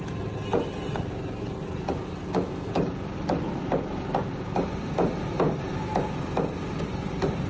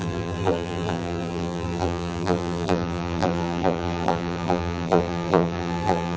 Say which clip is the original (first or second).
first